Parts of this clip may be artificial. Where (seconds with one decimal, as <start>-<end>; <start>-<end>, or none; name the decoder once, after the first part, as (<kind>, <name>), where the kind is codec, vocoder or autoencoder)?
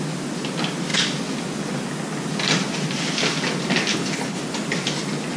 3.9-4.4 (codec, HILCodec)